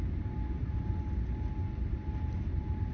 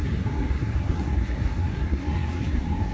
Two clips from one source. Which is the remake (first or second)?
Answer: second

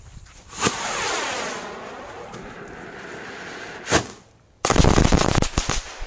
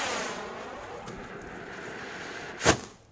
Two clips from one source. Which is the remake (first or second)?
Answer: first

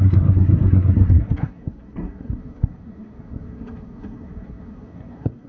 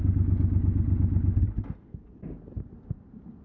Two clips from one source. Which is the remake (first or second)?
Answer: first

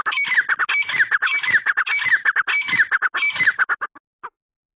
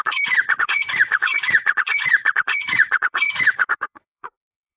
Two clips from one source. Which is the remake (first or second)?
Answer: second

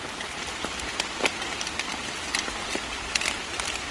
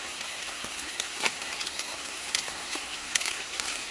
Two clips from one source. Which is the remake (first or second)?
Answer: second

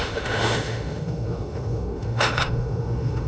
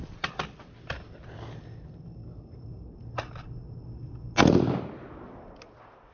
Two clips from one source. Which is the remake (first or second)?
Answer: first